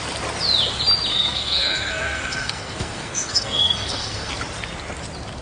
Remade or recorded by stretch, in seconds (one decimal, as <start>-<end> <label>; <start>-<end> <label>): 0.0-1.1 recorded; 1.1-4.3 remade; 4.3-5.4 recorded

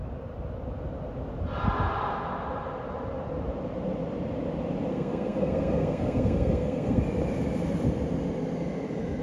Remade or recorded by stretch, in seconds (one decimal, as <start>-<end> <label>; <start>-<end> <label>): 0.0-4.9 recorded; 4.9-7.0 remade; 7.0-9.2 recorded